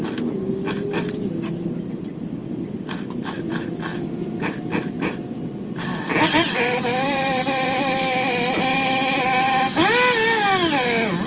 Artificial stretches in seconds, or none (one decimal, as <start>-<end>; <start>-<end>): 2.4-3.5; 3.9-8.6